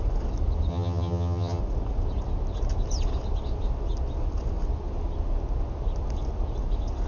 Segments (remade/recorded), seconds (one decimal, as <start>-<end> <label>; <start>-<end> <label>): 0.0-0.7 recorded; 0.7-1.6 remade; 1.6-7.1 recorded

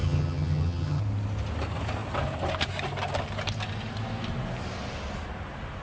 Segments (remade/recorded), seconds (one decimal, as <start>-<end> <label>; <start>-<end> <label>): 0.0-1.0 remade; 1.0-5.8 recorded

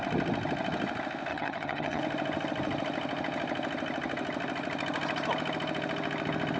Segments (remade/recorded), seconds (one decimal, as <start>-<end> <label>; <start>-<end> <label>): 0.0-1.3 recorded; 1.3-2.0 remade; 2.0-6.6 recorded

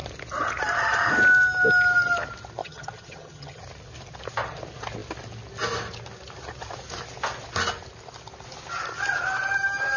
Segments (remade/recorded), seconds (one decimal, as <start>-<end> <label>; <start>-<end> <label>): 0.0-2.6 recorded; 2.6-3.6 remade; 3.6-10.0 recorded

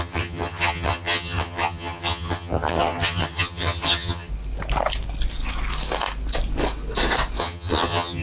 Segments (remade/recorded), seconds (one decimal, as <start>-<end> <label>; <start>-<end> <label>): 0.0-4.3 remade; 4.3-7.4 recorded; 7.4-8.2 remade

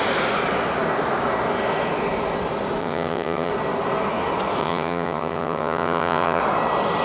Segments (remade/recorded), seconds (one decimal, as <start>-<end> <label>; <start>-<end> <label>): 0.0-2.8 recorded; 2.8-3.5 remade; 3.5-4.6 recorded; 4.6-6.4 remade; 6.4-7.0 recorded

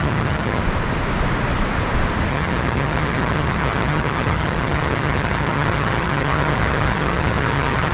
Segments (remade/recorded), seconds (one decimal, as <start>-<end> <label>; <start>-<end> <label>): 0.0-0.6 remade; 0.6-2.3 recorded; 2.3-7.9 remade